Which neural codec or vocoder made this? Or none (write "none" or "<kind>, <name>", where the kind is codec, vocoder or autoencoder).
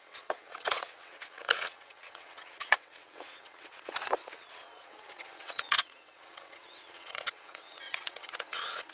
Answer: vocoder, WaveNeXt